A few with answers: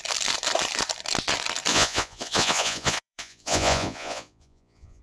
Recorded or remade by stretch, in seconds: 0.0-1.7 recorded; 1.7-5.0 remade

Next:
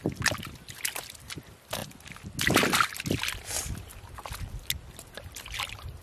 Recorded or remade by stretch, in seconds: 0.0-6.0 recorded